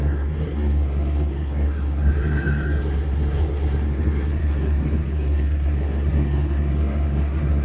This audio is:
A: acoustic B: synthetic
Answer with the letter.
B